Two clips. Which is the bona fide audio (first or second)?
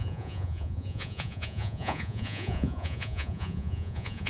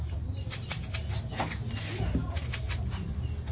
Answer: second